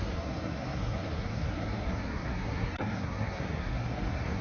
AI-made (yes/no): yes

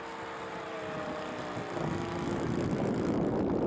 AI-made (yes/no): no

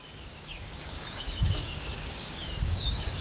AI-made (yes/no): yes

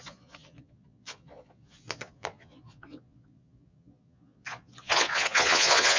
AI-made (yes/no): yes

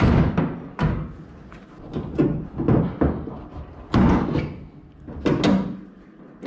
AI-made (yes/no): no